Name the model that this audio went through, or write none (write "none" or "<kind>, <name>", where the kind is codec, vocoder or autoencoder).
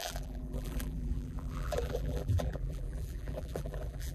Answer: vocoder, BigVGAN v2